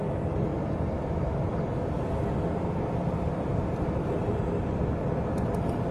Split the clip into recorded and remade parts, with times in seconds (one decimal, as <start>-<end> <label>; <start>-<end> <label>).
0.0-0.5 recorded; 0.5-4.0 remade; 4.0-5.9 recorded